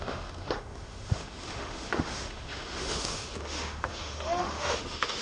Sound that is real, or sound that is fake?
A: fake